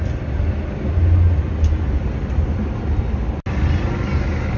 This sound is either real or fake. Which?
real